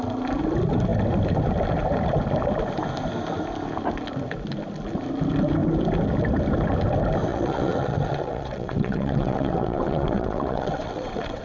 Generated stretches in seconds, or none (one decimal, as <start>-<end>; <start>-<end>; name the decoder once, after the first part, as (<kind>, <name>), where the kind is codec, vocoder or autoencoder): 7.3-11.4 (vocoder, WaveNeXt)